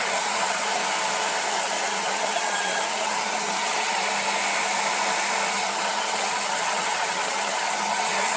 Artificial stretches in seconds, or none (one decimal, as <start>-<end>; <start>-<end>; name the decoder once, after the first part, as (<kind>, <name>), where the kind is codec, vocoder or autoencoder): 0.0-0.8 (vocoder, HiFi-GAN); 1.5-4.0; 5.5-8.4